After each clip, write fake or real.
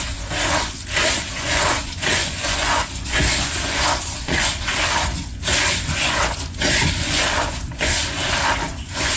fake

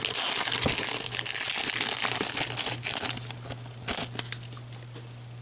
real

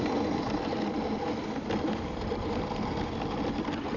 real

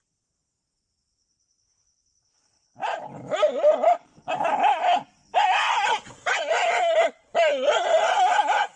real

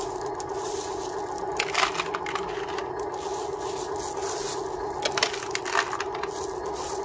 real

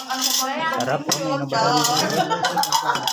real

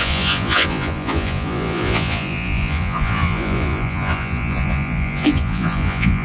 fake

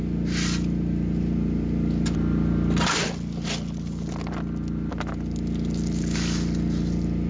real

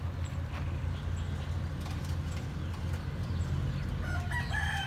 real